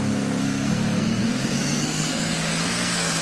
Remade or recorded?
remade